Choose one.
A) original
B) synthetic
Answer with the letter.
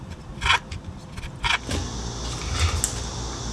A